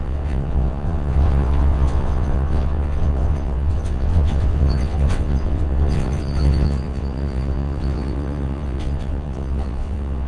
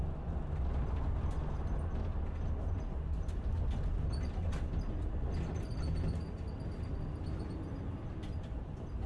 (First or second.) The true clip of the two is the second